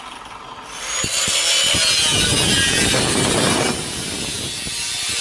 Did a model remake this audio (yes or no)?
no